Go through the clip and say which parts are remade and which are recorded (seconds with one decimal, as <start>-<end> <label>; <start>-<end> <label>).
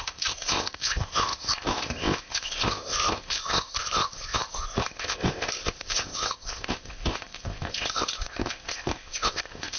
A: 0.0-9.8 remade